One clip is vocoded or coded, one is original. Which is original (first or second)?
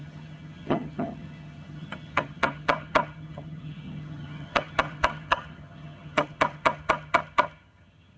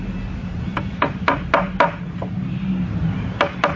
second